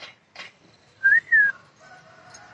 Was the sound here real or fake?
real